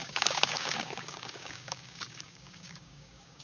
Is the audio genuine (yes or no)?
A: no